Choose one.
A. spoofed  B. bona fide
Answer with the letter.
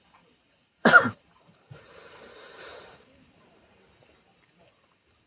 A